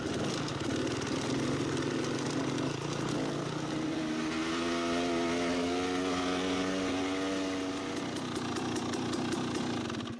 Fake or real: real